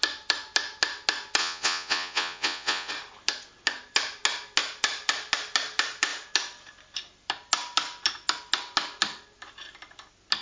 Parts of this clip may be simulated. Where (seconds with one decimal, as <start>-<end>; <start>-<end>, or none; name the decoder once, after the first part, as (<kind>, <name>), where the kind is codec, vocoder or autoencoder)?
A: 1.4-2.9 (vocoder, Vocos)